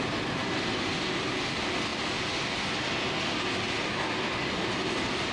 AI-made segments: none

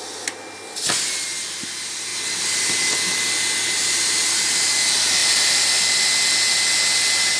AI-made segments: 5.2-5.9 (vocoder, BigVGAN v2)

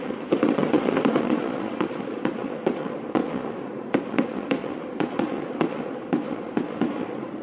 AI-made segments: 0.0-7.4 (vocoder, Vocos)

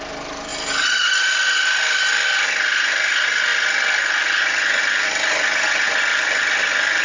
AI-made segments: none

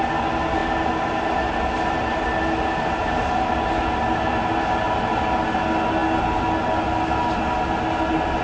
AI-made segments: none

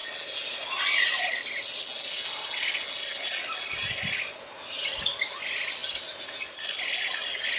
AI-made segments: none

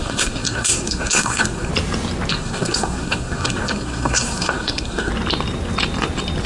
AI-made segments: 0.0-1.7 (codec, SNAC); 2.3-5.1